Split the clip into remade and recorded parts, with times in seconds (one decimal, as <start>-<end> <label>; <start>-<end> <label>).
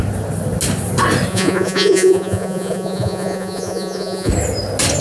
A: 0.0-1.3 recorded; 1.3-4.3 remade; 4.3-5.0 recorded